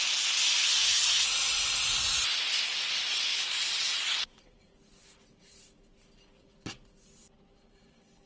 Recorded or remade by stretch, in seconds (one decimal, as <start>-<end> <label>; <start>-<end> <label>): 0.0-3.3 recorded; 3.3-4.7 remade; 4.7-8.3 recorded